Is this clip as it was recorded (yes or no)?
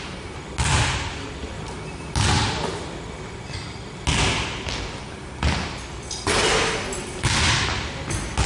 yes